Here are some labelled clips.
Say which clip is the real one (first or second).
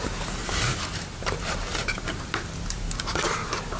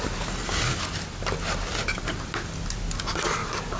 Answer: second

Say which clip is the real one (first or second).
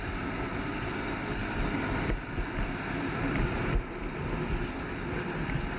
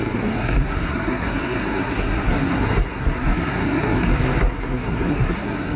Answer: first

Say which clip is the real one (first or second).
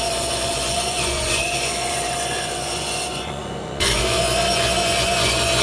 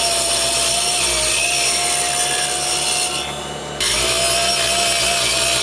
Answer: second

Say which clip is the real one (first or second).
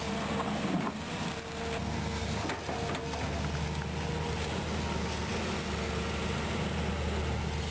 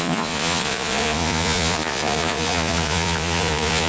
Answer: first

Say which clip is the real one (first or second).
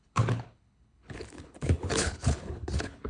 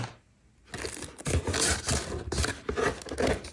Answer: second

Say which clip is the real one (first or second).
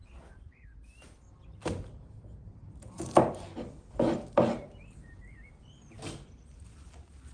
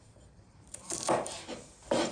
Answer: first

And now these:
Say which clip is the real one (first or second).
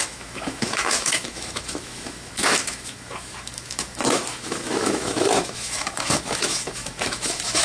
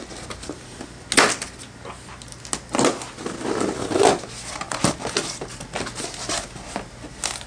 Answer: second